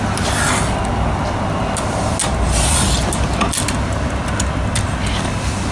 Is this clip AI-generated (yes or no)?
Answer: no